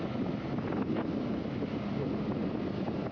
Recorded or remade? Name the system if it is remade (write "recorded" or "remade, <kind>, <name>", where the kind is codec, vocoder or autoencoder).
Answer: recorded